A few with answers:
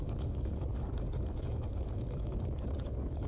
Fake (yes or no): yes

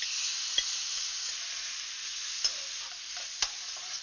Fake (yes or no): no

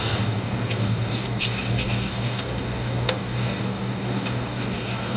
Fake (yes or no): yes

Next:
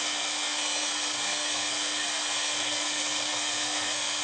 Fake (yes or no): yes